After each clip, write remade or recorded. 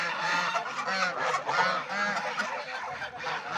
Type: recorded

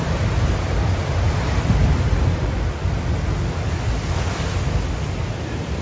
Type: recorded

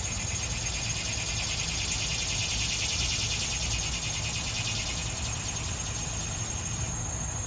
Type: recorded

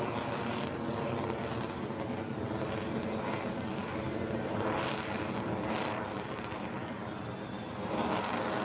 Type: remade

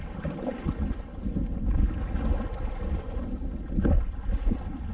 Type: recorded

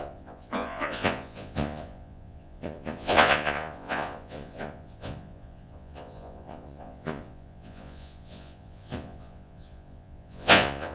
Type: remade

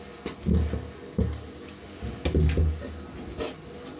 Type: recorded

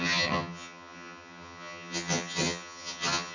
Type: remade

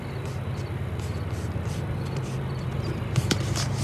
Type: recorded